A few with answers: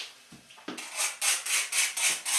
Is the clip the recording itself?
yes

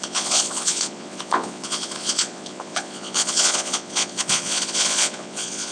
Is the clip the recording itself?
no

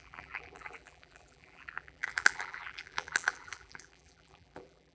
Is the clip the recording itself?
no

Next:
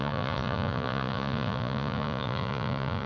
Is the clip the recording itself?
no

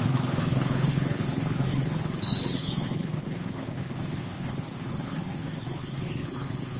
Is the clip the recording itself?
no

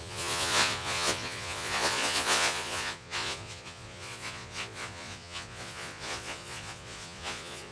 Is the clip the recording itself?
no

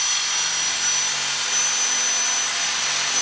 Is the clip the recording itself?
yes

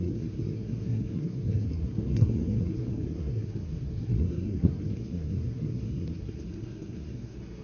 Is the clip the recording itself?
no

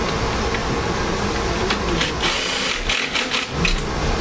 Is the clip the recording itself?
yes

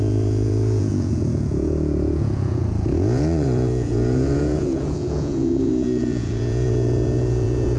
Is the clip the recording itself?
no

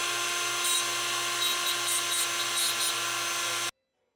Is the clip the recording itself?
yes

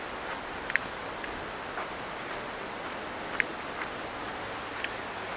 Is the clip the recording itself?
yes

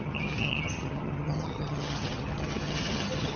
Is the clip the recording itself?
no